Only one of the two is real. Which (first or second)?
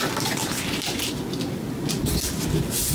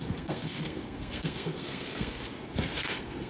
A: first